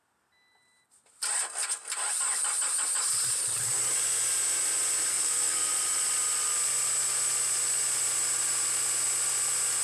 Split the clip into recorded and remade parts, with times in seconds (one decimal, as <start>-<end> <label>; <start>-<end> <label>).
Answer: 0.0-5.1 recorded; 5.1-5.7 remade; 5.7-9.8 recorded